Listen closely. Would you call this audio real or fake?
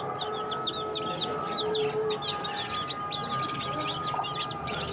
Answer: real